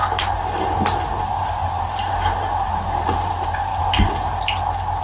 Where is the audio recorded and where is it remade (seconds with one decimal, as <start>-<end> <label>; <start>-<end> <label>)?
0.0-1.2 recorded; 1.2-3.7 remade; 3.7-5.0 recorded